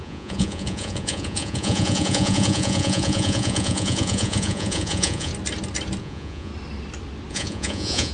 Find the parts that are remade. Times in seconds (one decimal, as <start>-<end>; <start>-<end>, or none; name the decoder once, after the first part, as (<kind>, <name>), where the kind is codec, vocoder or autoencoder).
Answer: 0.0-5.3 (vocoder, Vocos); 6.0-6.5; 7.3-8.1

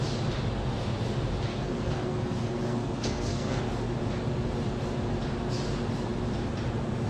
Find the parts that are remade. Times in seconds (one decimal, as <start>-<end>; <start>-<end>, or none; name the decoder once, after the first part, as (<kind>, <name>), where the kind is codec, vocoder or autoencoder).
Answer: 1.5-3.6 (codec, SNAC)

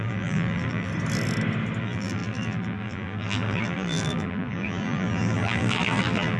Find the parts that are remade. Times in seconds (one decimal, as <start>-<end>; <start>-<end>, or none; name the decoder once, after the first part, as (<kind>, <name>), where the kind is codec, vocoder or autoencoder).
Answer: 0.0-0.9 (vocoder, BigVGAN v2); 1.8-6.4

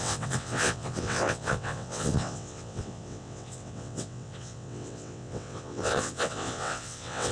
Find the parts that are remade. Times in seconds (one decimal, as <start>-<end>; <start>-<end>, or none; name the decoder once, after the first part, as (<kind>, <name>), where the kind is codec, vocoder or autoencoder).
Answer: 0.0-7.3 (vocoder, WaveNeXt)

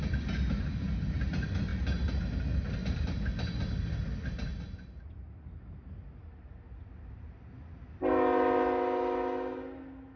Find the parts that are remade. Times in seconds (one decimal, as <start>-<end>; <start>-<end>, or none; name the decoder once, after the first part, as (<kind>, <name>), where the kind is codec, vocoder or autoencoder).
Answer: none

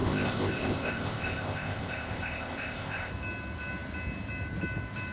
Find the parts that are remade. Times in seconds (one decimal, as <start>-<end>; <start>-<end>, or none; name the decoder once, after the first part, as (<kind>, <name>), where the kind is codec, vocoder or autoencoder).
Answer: 0.0-3.1 (codec, ZipCodec)

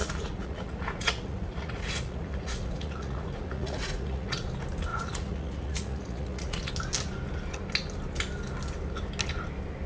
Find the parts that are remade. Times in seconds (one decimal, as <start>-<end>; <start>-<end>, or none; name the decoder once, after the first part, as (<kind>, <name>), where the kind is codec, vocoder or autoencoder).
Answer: 0.0-4.5 (vocoder, Vocos); 4.9-6.7

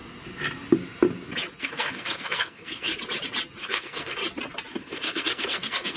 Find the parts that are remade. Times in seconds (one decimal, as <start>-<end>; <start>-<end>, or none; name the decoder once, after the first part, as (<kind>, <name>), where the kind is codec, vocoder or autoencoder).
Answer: 1.6-2.9 (codec, SNAC); 3.6-4.2; 4.8-6.0